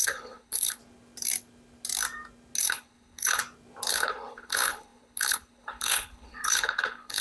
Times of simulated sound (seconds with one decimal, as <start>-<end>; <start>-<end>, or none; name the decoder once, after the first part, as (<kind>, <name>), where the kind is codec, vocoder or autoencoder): 0.0-0.8 (codec, HILCodec); 2.6-3.4; 3.9-7.2